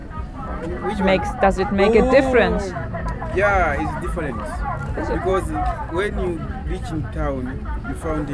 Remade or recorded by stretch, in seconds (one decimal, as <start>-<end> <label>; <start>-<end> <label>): 0.0-8.3 recorded